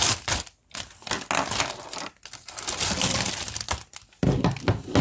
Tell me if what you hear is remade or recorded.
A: recorded